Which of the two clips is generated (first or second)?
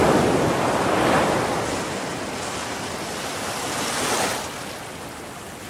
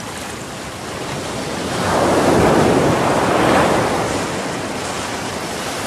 second